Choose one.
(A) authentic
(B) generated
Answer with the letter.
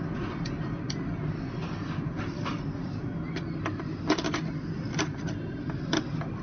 A